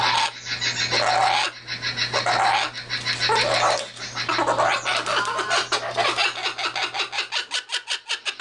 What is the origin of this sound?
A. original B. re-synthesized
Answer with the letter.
A